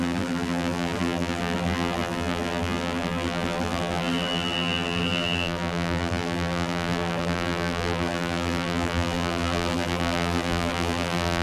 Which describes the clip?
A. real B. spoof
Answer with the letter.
B